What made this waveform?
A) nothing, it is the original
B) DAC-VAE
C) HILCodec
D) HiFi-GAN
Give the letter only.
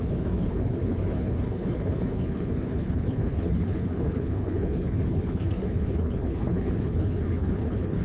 C